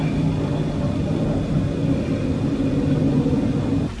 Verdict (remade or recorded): recorded